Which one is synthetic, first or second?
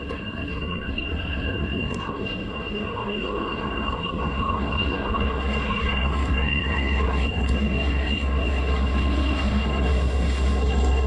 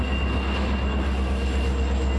first